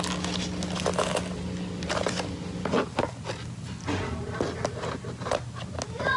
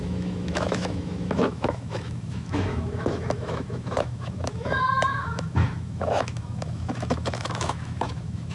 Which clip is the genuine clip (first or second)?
first